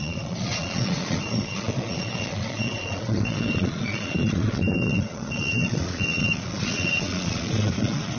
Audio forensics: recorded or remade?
remade